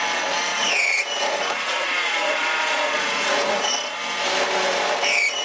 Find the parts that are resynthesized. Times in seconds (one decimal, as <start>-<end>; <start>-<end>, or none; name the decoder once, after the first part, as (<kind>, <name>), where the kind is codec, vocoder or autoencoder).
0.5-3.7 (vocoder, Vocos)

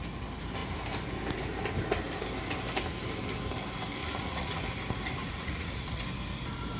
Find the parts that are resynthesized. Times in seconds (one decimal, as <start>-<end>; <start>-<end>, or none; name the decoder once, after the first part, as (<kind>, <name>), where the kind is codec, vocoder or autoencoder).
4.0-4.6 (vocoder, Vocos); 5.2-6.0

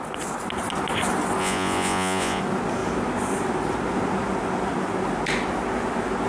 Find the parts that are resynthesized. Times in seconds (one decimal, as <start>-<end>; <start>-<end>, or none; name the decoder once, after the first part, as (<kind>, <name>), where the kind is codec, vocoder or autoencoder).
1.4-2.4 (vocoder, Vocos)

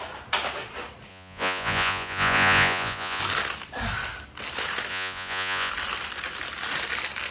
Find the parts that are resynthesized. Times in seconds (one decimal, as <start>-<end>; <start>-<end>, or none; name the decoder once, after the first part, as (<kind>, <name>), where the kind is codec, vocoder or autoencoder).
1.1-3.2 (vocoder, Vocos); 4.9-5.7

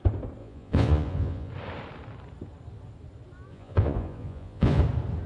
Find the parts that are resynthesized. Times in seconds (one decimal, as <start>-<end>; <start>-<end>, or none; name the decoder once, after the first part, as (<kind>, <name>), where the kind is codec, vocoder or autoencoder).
0.4-1.5 (vocoder, Vocos); 3.5-4.8